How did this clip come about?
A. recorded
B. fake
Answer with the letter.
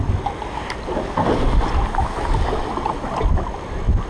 A